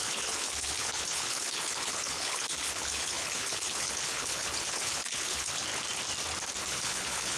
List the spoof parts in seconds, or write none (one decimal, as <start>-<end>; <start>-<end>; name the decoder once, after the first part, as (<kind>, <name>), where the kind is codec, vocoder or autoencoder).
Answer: 0.0-5.7 (codec, HILCodec); 6.6-7.4